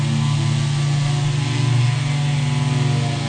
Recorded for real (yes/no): yes